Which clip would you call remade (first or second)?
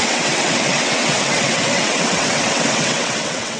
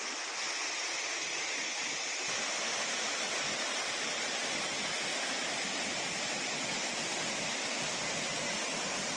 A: first